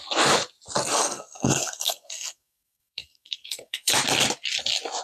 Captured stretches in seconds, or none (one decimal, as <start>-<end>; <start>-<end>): 0.0-0.9; 3.9-5.0